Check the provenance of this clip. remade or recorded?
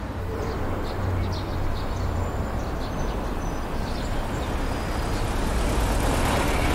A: recorded